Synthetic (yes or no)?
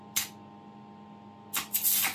no